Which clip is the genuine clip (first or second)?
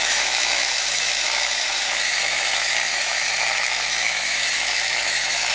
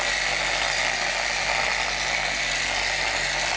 second